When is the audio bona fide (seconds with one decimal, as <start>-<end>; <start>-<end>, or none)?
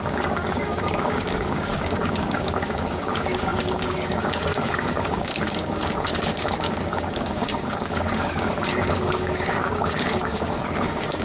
none